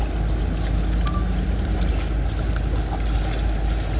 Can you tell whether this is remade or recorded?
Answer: recorded